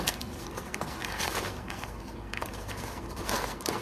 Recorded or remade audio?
remade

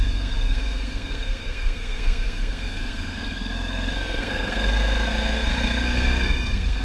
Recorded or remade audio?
remade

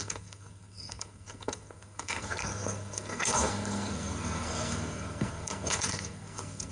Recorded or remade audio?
remade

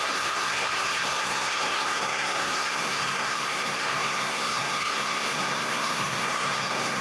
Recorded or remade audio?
remade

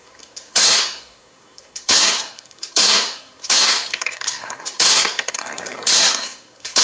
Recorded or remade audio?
remade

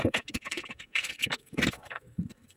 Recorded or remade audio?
remade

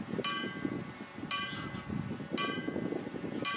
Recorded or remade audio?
recorded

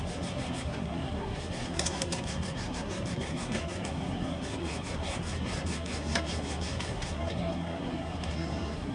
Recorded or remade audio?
remade